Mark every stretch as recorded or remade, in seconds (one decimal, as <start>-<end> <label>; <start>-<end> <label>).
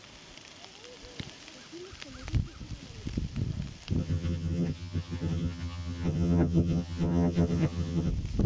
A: 0.0-4.0 recorded; 4.0-8.1 remade; 8.1-8.5 recorded